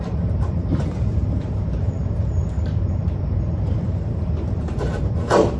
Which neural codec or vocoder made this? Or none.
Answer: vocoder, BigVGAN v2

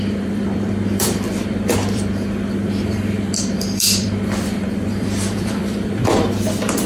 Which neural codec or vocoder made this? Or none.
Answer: vocoder, BigVGAN v2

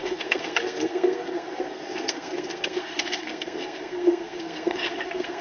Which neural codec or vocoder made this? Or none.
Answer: codec, SNAC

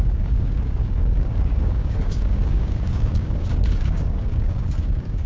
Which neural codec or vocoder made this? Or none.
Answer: codec, DAC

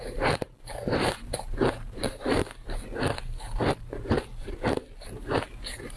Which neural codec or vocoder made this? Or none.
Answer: vocoder, BigVGAN v2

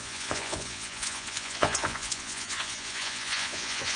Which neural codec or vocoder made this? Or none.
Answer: vocoder, Vocos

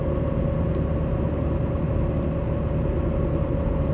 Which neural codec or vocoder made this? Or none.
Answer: none